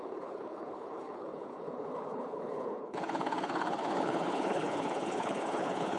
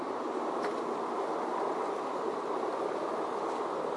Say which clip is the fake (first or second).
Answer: first